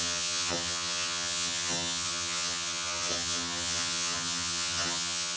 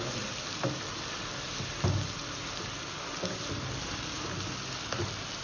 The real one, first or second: second